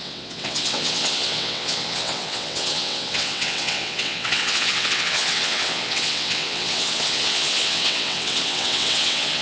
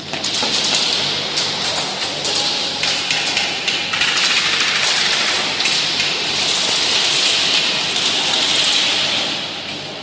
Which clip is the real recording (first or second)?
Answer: second